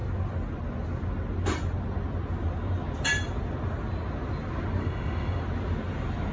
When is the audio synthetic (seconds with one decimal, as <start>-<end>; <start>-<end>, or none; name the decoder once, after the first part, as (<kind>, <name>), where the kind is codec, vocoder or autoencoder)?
4.8-5.4 (autoencoder, DAC-VAE)